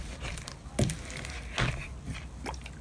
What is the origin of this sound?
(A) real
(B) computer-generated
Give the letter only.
A